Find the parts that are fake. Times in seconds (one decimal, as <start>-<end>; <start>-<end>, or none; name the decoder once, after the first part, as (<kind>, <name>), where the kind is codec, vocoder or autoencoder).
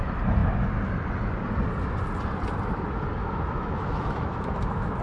3.2-5.0 (autoencoder, DAC-VAE)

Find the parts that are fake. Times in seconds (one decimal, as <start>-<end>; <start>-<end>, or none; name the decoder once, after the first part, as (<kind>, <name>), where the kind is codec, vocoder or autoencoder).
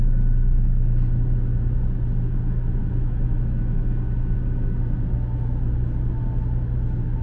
2.8-3.6 (autoencoder, DAC-VAE)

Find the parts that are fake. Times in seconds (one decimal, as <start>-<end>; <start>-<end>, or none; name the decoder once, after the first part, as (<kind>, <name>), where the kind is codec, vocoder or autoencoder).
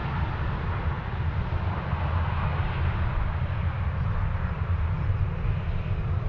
none